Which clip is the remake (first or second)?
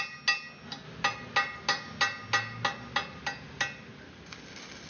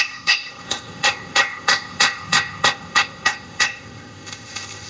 second